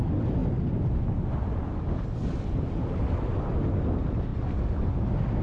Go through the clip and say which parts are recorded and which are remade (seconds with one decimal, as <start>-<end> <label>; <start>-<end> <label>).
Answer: 0.0-5.4 recorded